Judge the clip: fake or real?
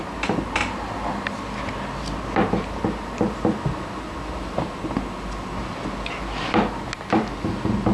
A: real